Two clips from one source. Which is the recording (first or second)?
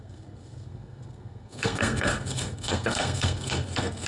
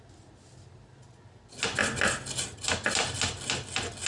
second